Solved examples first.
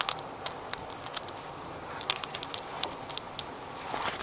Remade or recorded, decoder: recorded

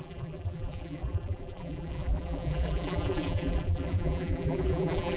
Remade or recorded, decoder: remade, vocoder, BigVGAN v2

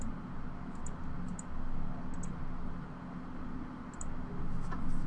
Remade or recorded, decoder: recorded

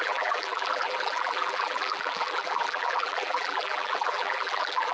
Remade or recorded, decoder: remade, vocoder, BigVGAN v2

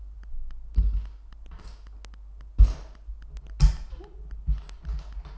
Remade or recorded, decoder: recorded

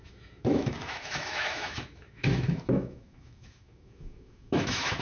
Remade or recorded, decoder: remade, autoencoder, DAC-VAE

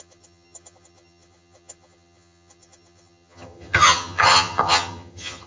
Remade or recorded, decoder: remade, vocoder, HiFi-GAN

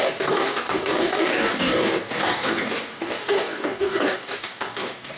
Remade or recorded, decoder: remade, codec, DAC